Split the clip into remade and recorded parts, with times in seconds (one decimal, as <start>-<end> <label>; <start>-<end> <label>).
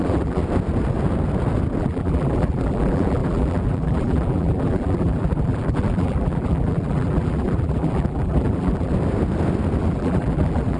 0.0-0.4 remade; 0.4-1.8 recorded; 1.8-8.9 remade; 8.9-9.8 recorded; 9.8-10.8 remade